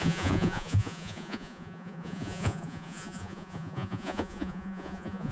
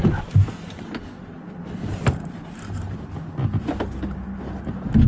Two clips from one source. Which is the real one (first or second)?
second